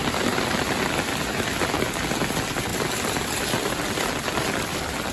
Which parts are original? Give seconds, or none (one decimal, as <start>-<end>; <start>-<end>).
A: 0.0-5.1